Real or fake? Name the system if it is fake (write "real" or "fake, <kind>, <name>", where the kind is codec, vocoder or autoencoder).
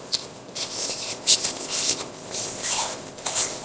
fake, codec, ZipCodec